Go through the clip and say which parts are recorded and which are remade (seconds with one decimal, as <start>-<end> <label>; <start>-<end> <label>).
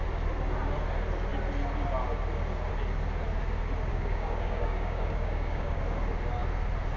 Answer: 0.0-3.9 recorded; 3.9-5.8 remade; 5.8-7.0 recorded